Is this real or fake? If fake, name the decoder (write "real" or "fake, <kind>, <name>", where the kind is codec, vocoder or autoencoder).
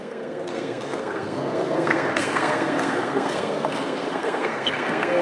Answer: fake, codec, SNAC